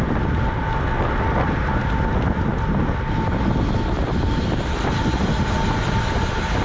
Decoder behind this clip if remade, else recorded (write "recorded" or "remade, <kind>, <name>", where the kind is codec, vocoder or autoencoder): recorded